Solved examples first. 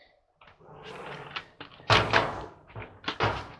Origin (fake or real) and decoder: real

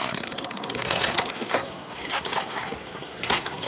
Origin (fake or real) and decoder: fake, codec, SNAC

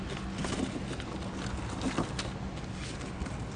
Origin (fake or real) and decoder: real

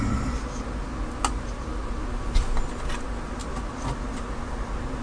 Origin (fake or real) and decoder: real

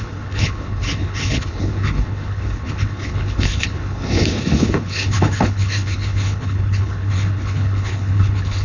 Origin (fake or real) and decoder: fake, codec, HILCodec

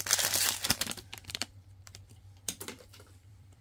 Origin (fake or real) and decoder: fake, vocoder, BigVGAN v2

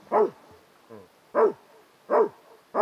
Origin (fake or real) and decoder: real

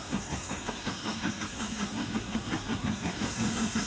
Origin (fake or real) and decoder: fake, codec, SNAC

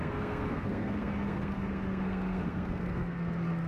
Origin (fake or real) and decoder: fake, codec, SNAC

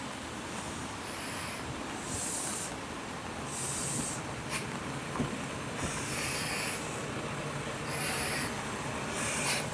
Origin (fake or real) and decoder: real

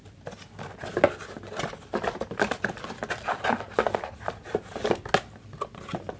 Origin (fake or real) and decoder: real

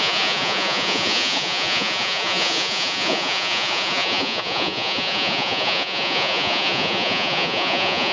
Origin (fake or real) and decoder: fake, vocoder, Vocos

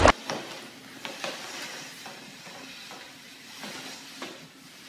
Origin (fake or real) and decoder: real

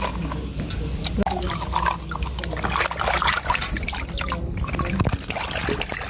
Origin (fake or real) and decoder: real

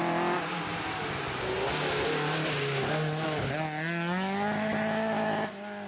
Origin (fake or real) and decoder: real